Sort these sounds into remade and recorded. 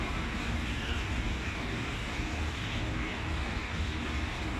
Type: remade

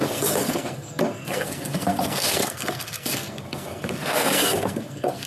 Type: remade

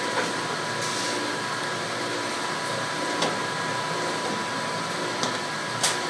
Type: recorded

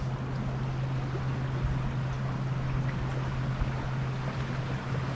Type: recorded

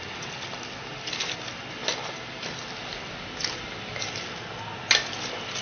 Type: recorded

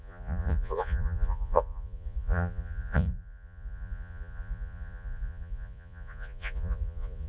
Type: remade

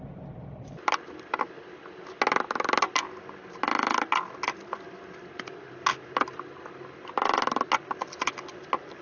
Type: recorded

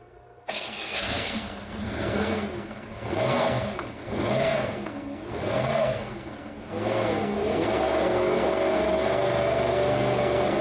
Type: remade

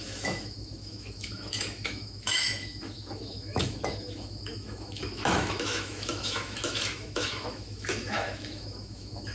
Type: remade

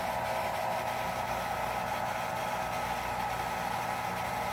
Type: recorded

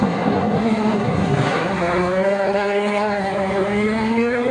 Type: remade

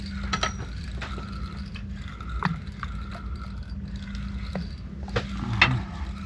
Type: recorded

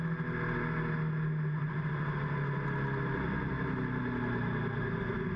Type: recorded